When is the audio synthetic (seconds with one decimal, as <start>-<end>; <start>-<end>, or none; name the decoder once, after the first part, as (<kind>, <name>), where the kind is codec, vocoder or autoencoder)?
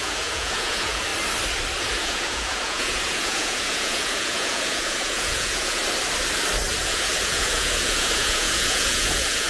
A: 0.0-1.1 (vocoder, Vocos); 1.8-5.8; 6.8-9.5